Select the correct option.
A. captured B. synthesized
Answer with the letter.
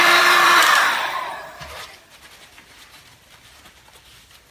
B